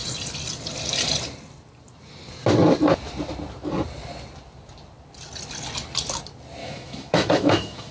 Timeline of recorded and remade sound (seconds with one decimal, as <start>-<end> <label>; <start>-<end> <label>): 0.0-6.6 recorded; 6.6-7.9 remade